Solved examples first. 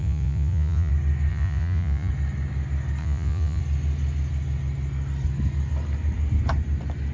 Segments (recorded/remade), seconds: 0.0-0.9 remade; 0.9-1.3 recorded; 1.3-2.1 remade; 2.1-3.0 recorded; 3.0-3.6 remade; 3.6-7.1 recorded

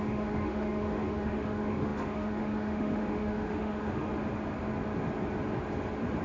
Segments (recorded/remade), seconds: 0.0-4.1 remade; 4.1-6.2 recorded

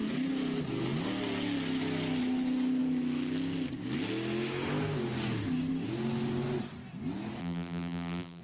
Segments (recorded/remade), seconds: 0.0-7.4 recorded; 7.4-8.4 remade

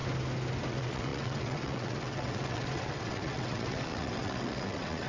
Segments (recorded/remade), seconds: 0.0-0.7 recorded; 0.7-5.1 remade

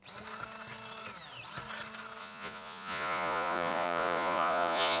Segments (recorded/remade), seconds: 0.0-2.2 recorded; 2.2-5.0 remade

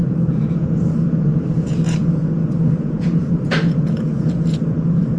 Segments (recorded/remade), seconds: 0.0-5.2 remade

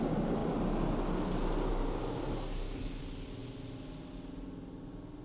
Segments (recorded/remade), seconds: 0.0-2.3 recorded; 2.3-3.0 remade; 3.0-5.2 recorded

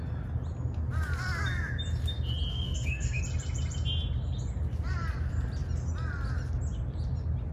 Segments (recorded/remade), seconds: 0.0-2.5 recorded; 2.5-3.2 remade; 3.2-7.5 recorded